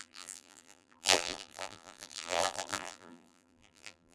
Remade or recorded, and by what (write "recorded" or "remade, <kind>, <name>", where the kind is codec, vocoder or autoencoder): remade, vocoder, BigVGAN v2